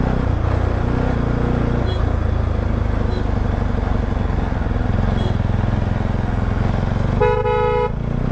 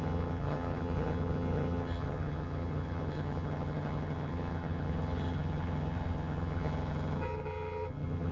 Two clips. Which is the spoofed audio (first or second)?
second